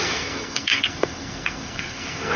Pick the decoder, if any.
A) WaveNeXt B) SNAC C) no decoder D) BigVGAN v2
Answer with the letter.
B